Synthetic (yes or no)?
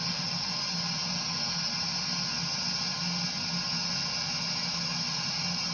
no